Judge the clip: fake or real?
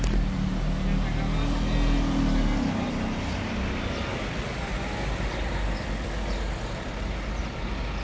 real